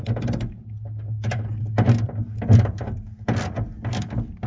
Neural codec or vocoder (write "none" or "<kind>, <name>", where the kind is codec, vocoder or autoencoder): none